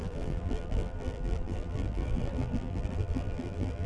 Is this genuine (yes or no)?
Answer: no